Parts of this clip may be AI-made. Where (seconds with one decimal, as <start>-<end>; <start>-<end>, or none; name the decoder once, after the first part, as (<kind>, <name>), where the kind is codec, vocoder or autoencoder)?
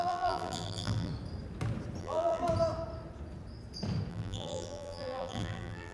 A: 0.0-1.1 (vocoder, BigVGAN v2); 2.0-2.4; 4.1-5.9